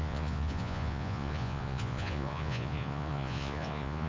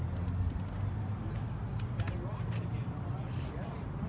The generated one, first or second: first